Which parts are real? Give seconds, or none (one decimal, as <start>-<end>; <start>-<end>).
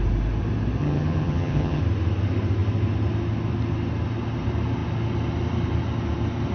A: 0.0-0.8; 1.8-6.5